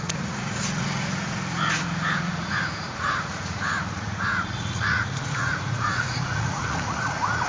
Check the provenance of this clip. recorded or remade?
remade